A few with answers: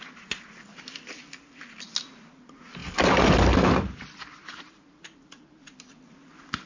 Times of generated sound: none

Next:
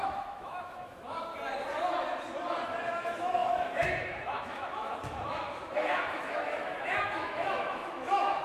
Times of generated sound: 0.0-1.3; 2.9-8.4

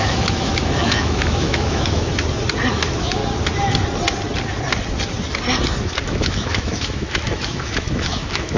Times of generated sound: 0.0-2.1; 2.7-3.2; 6.0-8.6

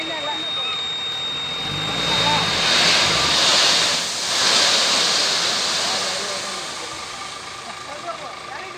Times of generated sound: none

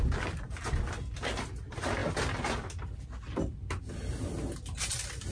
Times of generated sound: none

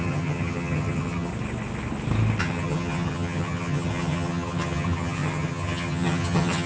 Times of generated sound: 0.0-1.3; 2.4-6.7

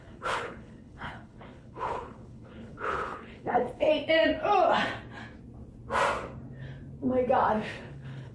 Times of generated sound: 0.0-3.9; 7.5-8.3

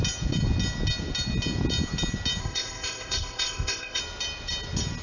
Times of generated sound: 2.4-4.0